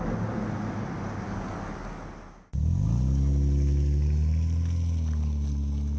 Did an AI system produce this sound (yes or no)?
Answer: no